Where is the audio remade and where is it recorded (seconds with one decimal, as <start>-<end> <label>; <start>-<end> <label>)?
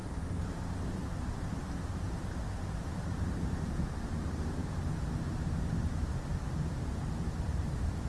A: 0.0-0.5 recorded; 0.5-8.1 remade